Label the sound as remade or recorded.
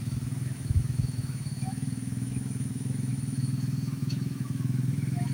remade